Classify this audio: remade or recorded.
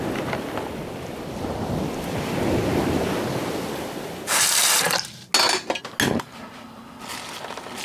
recorded